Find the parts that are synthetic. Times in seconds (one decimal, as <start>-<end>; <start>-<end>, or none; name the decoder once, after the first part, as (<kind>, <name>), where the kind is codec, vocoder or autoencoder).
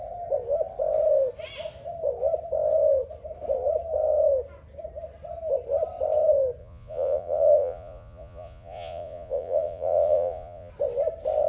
6.6-10.7 (vocoder, Vocos)